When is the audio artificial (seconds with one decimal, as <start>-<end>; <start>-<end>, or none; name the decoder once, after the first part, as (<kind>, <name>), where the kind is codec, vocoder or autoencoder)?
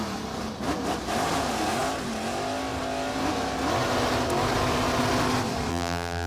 5.7-6.3 (vocoder, BigVGAN v2)